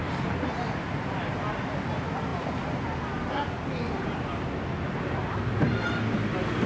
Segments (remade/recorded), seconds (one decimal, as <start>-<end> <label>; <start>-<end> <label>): 0.0-6.7 recorded